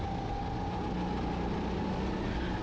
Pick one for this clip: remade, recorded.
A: recorded